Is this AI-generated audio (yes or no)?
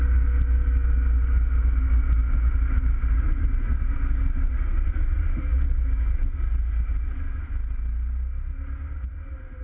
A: no